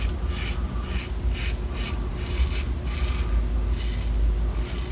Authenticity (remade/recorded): recorded